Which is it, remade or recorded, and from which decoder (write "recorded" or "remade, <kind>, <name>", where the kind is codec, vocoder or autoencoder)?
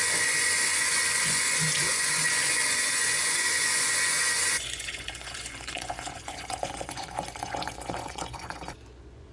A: remade, vocoder, Vocos